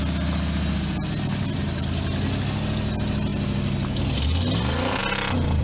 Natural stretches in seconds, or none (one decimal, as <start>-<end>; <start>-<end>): 0.0-5.6